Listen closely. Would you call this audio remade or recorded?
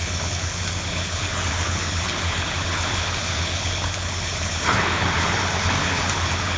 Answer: remade